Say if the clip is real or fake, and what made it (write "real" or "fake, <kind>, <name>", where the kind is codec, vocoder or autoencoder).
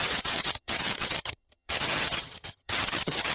fake, vocoder, HiFi-GAN